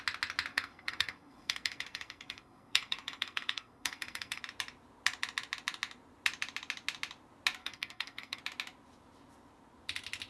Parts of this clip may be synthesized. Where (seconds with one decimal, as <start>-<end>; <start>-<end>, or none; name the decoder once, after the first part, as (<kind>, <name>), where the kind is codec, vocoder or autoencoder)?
0.5-4.4 (codec, SNAC); 7.6-8.4

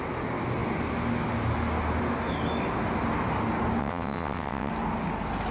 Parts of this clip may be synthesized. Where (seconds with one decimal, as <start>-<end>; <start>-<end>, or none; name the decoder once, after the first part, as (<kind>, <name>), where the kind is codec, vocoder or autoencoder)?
3.8-4.7 (vocoder, WaveNeXt)

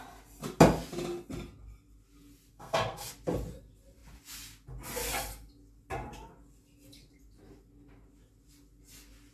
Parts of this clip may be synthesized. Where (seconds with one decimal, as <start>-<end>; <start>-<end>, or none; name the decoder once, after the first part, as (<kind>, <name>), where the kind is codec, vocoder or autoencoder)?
2.5-3.1 (codec, SNAC)

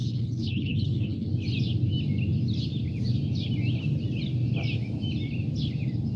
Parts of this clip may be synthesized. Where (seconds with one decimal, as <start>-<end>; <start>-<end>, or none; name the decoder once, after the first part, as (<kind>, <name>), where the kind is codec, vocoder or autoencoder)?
0.0-1.3 (codec, HILCodec)

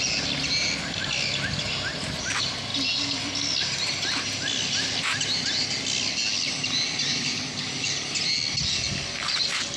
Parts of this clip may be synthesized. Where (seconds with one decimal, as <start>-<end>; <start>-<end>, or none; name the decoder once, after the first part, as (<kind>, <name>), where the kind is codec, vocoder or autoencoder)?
none

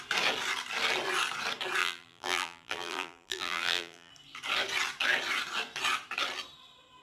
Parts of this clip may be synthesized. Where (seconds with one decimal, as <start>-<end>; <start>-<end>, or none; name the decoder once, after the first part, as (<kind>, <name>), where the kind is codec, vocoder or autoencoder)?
1.8-4.1 (vocoder, BigVGAN v2)

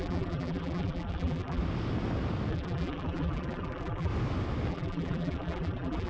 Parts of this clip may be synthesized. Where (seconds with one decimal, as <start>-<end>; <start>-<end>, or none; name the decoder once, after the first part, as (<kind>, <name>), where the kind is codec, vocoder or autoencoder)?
0.0-1.6 (vocoder, BigVGAN v2); 2.5-4.1; 4.7-6.1

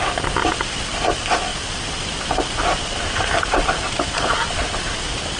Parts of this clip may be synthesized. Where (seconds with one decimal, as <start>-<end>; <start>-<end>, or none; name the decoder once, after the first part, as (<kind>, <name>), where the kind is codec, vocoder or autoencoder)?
none